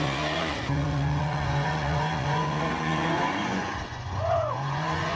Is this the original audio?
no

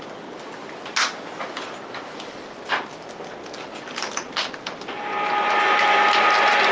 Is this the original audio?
yes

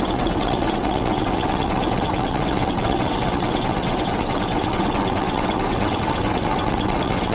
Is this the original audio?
no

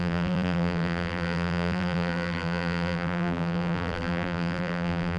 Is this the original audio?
no